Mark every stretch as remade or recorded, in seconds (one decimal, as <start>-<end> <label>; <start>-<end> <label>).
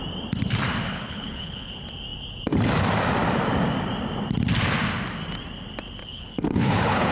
0.0-0.9 recorded; 0.9-1.7 remade; 1.7-6.0 recorded; 6.0-7.1 remade